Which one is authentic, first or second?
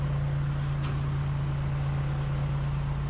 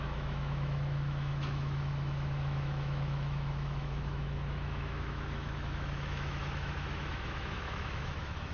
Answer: first